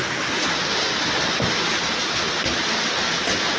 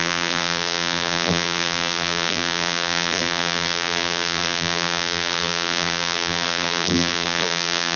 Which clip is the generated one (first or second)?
second